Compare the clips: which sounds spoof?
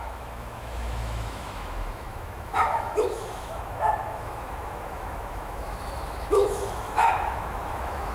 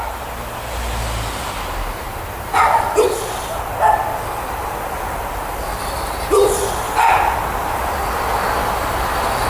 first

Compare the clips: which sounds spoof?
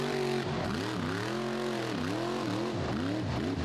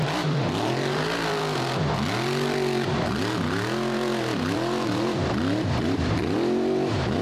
second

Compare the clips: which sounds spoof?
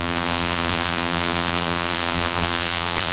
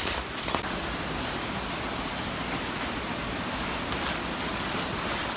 first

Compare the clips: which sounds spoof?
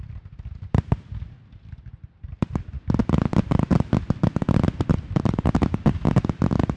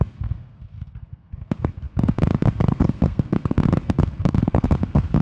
second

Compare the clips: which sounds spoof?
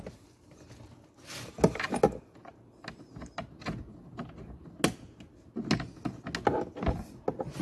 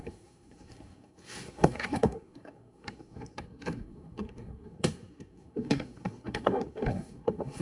second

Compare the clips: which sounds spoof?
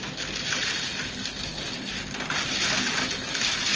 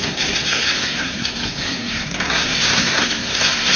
second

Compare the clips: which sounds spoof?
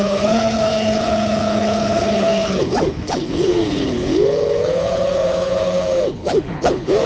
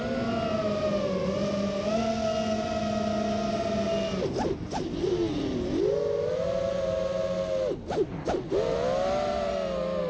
first